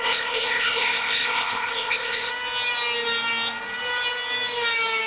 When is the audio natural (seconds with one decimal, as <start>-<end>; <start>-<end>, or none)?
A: 2.3-5.1